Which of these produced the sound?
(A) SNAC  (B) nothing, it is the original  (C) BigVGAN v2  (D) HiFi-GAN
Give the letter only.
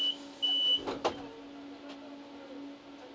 B